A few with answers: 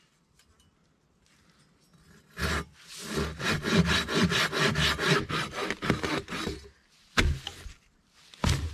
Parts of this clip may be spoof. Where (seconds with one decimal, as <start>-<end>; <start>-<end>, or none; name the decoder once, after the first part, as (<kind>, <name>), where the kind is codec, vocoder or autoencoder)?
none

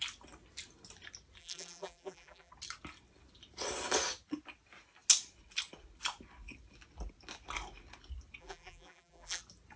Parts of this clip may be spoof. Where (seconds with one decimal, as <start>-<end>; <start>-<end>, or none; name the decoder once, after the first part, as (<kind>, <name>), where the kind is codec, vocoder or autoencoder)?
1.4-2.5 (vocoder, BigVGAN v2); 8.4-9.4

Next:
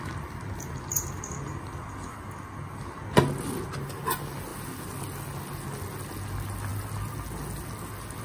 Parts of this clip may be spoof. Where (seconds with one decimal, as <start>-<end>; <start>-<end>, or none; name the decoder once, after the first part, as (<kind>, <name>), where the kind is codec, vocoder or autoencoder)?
none

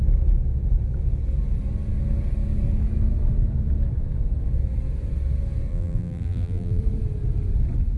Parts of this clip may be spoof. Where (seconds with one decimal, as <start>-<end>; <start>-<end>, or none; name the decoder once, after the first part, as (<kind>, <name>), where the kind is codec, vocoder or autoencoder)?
5.7-6.8 (vocoder, BigVGAN v2)

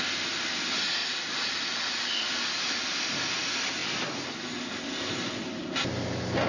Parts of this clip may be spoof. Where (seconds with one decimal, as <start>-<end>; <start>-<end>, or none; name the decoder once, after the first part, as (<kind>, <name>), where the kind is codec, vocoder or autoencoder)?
none